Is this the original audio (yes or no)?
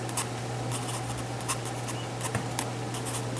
yes